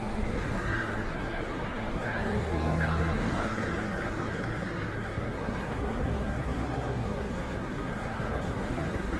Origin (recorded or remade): remade